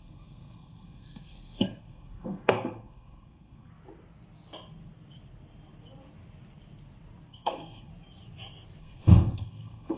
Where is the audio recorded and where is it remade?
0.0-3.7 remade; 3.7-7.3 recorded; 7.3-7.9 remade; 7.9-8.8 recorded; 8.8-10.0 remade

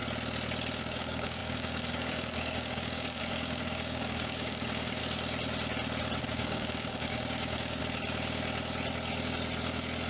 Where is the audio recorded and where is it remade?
0.0-0.8 recorded; 0.8-5.0 remade; 5.0-6.2 recorded; 6.2-7.8 remade; 7.8-10.1 recorded

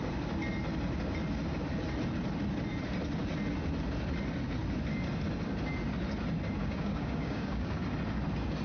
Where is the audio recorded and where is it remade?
0.0-6.6 recorded; 6.6-7.8 remade; 7.8-8.6 recorded

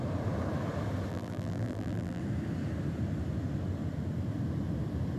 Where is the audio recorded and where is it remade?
0.0-1.1 recorded; 1.1-2.2 remade; 2.2-5.2 recorded

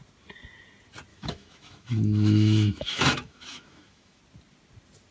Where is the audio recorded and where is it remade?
0.0-1.1 recorded; 1.1-4.2 remade; 4.2-5.1 recorded

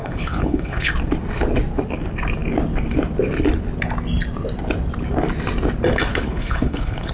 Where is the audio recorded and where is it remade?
0.0-0.9 remade; 0.9-6.1 recorded; 6.1-7.1 remade